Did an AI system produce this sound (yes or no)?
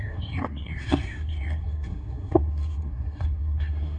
yes